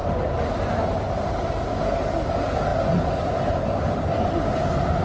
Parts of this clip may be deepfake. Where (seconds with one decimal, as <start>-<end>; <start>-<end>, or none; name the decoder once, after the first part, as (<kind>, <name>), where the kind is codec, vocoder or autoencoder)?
none